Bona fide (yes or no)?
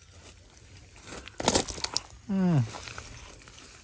yes